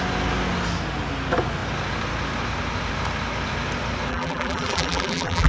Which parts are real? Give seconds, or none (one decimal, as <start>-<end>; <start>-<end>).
0.0-4.1